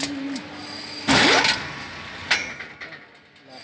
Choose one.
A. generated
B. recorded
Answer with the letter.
B